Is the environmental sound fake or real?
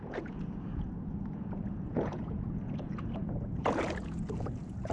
fake